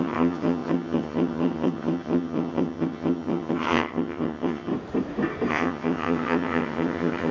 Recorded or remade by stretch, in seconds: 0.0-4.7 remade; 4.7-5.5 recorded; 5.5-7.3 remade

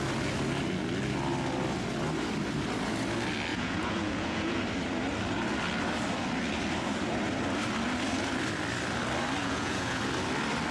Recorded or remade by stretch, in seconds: 0.0-3.5 recorded; 3.5-4.6 remade; 4.6-9.4 recorded; 9.4-10.0 remade; 10.0-10.7 recorded

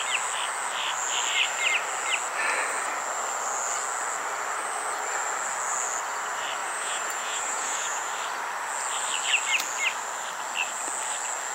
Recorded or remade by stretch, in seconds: 0.0-6.6 recorded; 6.6-8.1 remade; 8.1-11.5 recorded

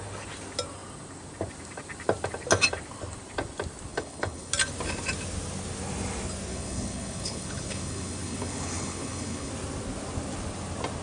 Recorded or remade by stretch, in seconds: 0.0-3.9 recorded; 3.9-4.5 remade; 4.5-6.5 recorded; 6.5-9.5 remade; 9.5-11.0 recorded